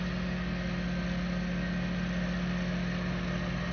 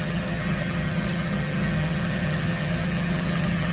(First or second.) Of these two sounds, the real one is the first